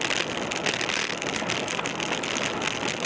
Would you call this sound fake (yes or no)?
no